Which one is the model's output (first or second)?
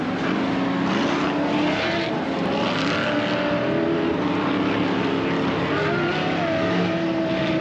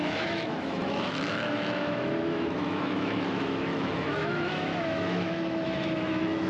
second